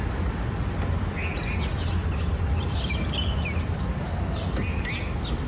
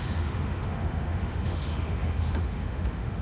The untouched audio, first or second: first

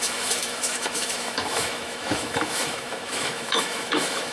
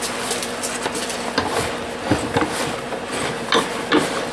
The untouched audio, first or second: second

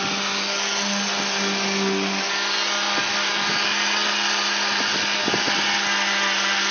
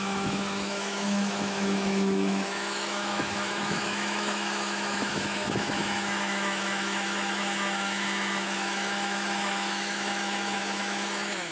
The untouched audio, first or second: first